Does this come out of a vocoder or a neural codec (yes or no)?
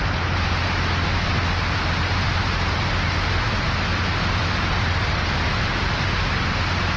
no